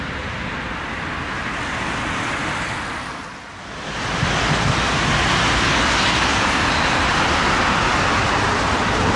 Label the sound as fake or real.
real